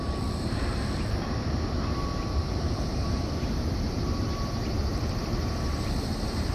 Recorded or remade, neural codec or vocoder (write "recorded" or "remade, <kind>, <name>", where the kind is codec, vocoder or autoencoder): remade, vocoder, BigVGAN v2